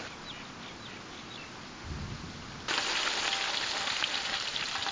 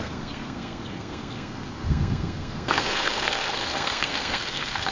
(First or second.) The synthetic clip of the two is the second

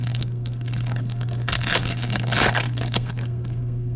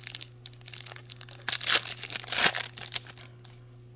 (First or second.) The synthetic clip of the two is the first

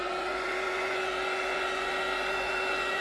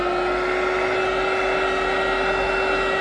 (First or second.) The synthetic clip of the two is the first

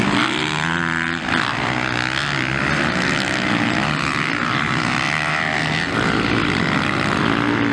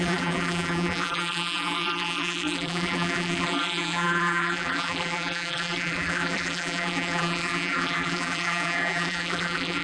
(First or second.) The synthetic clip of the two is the second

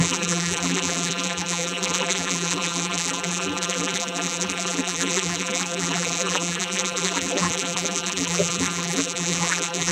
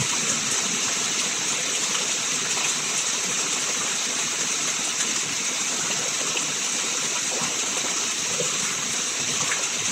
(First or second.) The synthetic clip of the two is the first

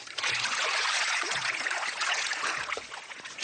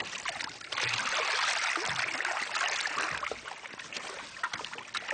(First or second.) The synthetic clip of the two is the first